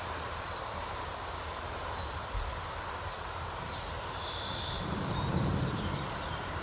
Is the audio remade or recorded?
remade